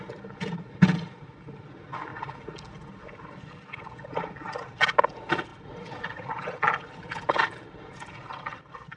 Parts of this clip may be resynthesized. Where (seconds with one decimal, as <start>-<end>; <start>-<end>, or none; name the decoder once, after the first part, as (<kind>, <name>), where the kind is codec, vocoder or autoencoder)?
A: 5.5-7.4 (vocoder, BigVGAN v2)